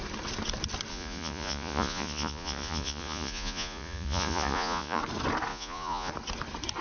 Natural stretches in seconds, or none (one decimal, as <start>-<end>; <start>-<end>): 0.0-0.9; 5.0-5.5; 6.1-6.8